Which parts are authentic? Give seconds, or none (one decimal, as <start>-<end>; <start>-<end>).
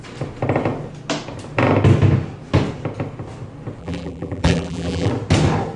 0.0-3.8; 5.1-5.8